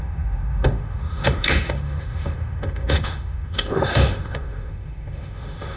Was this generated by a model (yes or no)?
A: yes